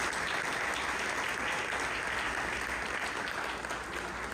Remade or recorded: recorded